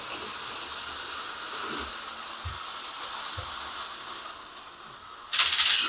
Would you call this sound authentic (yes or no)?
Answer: yes